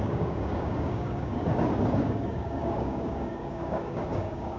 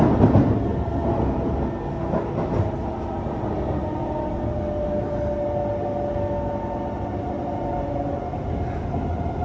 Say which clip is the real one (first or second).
second